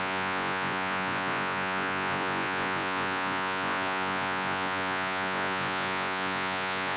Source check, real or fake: fake